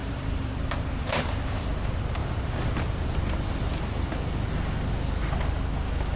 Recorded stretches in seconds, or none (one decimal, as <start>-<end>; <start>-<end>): 1.7-2.2; 3.2-6.2